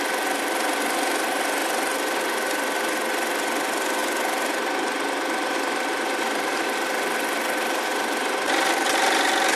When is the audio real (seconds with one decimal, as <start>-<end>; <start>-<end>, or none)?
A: 0.0-9.6